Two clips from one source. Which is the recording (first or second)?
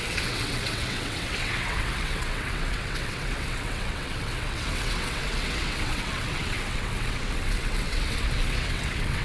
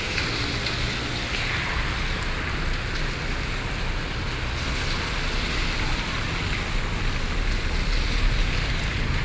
second